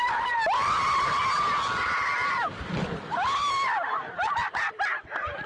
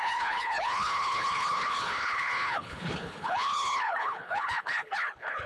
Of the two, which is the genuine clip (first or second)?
first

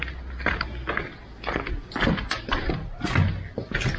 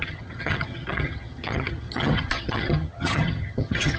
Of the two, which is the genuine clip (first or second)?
first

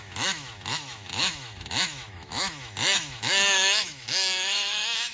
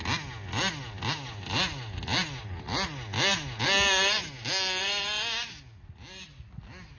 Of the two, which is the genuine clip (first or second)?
second